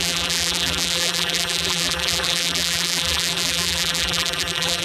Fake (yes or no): yes